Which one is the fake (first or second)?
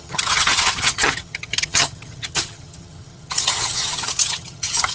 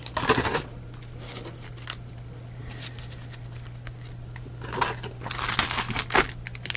first